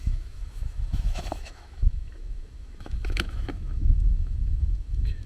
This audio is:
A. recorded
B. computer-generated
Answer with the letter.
B